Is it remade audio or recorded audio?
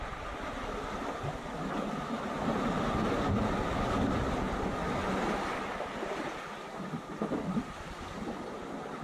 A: recorded